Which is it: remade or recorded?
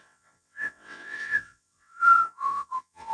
remade